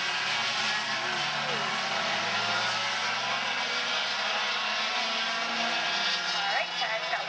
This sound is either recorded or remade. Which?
recorded